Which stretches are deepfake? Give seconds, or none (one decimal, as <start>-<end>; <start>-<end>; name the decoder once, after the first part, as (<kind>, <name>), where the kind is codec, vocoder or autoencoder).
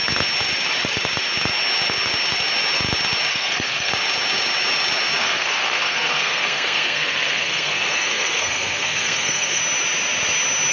3.3-3.9 (codec, SNAC); 5.2-9.6